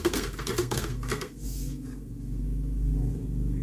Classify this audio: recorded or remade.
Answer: remade